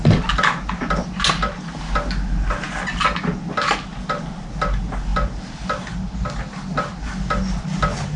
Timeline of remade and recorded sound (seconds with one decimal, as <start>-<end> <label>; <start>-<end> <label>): 0.0-8.2 recorded

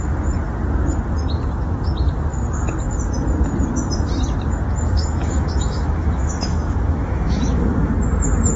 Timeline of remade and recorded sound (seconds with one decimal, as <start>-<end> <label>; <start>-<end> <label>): 0.0-5.0 recorded; 5.0-7.9 remade; 7.9-8.6 recorded

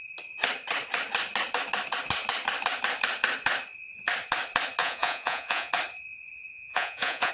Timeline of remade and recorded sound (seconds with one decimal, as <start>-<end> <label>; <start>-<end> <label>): 0.0-4.8 recorded; 4.8-5.7 remade; 5.7-6.5 recorded; 6.5-7.3 remade

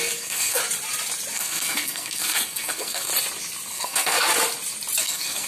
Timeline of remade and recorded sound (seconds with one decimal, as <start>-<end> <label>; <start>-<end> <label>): 0.0-0.6 remade; 0.6-1.3 recorded; 1.3-3.1 remade; 3.1-3.7 recorded; 3.7-4.3 remade; 4.3-5.0 recorded; 5.0-5.5 remade

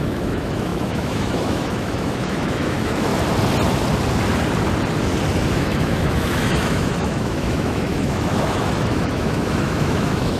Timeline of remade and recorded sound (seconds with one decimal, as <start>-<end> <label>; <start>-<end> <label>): 0.0-3.1 remade; 3.1-5.5 recorded; 5.5-10.4 remade

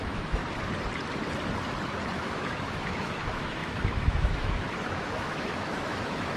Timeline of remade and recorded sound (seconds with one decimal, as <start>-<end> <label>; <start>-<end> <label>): 0.0-0.4 remade; 0.4-2.1 recorded; 2.1-6.4 remade

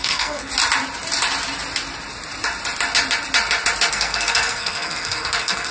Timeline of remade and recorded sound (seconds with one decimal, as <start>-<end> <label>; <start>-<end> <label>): 0.0-0.5 remade; 0.5-3.9 recorded; 3.9-5.7 remade

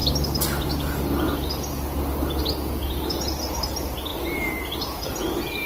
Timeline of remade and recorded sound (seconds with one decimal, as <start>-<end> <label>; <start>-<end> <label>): 0.0-5.7 recorded